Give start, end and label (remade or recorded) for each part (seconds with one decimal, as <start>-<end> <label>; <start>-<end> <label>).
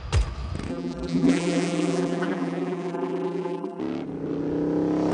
0.0-0.7 recorded; 0.7-3.8 remade; 3.8-5.1 recorded